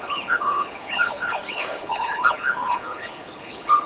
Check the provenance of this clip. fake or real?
fake